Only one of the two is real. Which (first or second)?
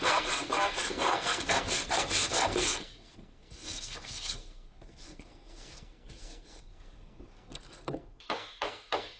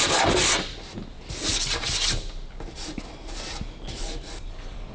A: second